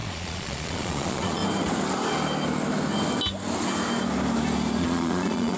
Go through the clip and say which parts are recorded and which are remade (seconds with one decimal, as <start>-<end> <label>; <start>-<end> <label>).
0.0-1.4 remade; 1.4-4.8 recorded; 4.8-5.6 remade